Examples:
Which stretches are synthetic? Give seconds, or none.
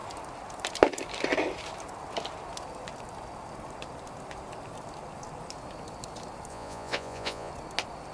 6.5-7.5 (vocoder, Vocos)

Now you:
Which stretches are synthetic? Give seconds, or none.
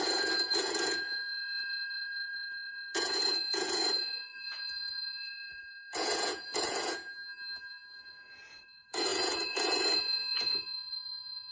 0.0-7.0 (vocoder, Vocos); 7.7-11.5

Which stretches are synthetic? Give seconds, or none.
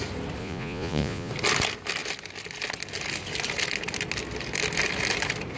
0.4-1.3 (vocoder, Vocos)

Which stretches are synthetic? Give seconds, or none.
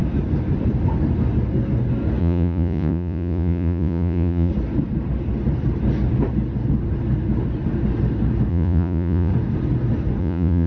2.2-4.5 (vocoder, Vocos); 8.5-9.3; 10.2-10.7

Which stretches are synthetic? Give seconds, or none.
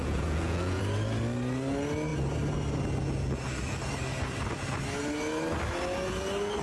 0.0-0.8 (vocoder, Vocos)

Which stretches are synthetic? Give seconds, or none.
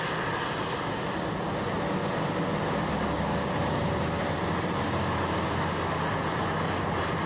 none